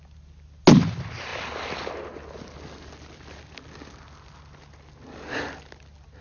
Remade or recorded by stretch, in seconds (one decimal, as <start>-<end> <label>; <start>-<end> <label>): 0.0-6.2 recorded